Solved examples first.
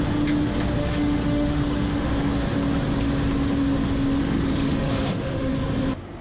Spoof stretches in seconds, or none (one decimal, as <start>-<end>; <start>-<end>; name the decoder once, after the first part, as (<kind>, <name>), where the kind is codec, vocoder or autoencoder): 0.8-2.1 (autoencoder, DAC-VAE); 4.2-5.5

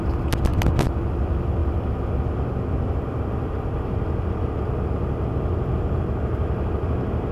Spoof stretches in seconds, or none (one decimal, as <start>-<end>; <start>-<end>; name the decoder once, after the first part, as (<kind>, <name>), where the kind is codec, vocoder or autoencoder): none

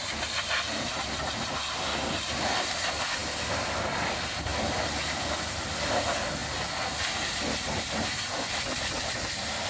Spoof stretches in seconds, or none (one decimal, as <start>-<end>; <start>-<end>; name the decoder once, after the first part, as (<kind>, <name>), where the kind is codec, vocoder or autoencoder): none

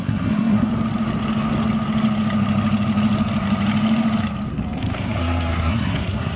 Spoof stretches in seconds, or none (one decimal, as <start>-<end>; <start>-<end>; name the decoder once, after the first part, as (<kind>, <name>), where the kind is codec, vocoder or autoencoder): 0.0-0.7 (codec, SNAC); 4.5-6.4

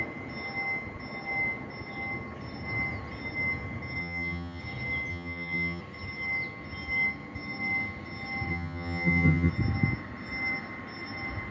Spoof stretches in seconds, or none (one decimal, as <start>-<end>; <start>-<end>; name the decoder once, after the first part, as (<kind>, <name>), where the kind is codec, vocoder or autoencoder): 4.0-4.6 (vocoder, HiFi-GAN); 5.1-5.8; 8.5-9.5

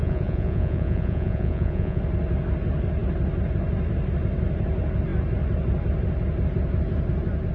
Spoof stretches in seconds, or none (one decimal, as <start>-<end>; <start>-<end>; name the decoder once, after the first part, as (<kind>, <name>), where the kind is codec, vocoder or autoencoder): 0.0-2.0 (vocoder, Vocos)